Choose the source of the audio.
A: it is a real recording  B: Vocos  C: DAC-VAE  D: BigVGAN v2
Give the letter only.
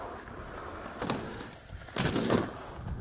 D